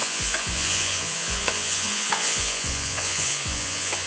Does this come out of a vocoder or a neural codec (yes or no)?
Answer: yes